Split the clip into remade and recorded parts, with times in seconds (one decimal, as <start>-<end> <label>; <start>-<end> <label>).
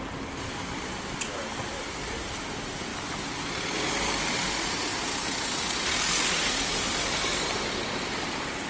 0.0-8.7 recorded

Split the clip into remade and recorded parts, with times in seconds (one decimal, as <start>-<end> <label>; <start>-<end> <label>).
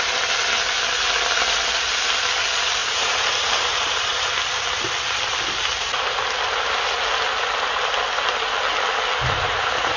0.0-2.8 recorded; 2.8-4.8 remade; 4.8-9.2 recorded; 9.2-10.0 remade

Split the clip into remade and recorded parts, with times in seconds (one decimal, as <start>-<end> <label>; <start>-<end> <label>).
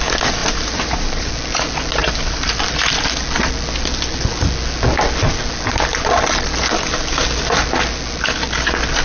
0.0-0.4 recorded; 0.4-1.3 remade; 1.3-2.0 recorded; 2.0-2.6 remade; 2.6-9.0 recorded